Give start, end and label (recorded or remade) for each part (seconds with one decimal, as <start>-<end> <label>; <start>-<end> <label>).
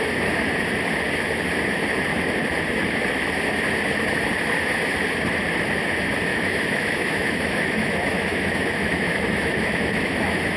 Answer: 0.0-6.3 recorded; 6.3-10.6 remade